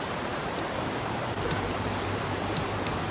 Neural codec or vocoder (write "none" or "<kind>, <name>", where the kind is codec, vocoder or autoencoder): vocoder, BigVGAN v2